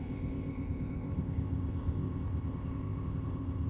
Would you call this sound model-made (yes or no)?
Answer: yes